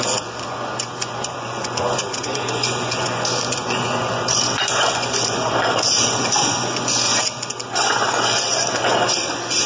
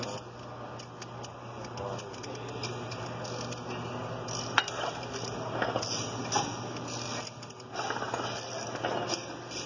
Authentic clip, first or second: second